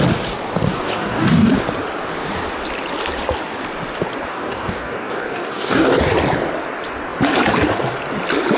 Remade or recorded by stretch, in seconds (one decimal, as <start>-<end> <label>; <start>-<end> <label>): 0.0-0.7 recorded; 0.7-1.5 remade; 1.5-4.3 recorded; 4.3-5.9 remade; 5.9-8.6 recorded